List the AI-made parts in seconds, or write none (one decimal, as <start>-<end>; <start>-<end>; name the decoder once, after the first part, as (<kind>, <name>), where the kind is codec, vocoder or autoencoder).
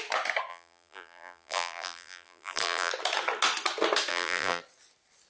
0.5-2.9 (vocoder, BigVGAN v2); 4.1-4.6